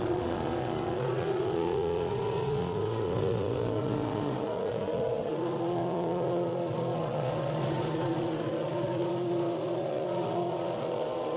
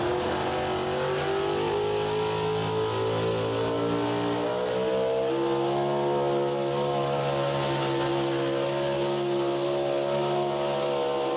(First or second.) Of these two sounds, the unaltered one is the second